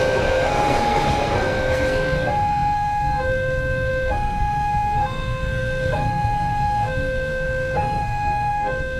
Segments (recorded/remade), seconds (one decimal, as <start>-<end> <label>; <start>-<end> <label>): 0.0-9.0 remade